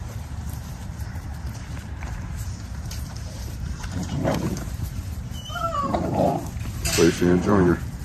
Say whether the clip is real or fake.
fake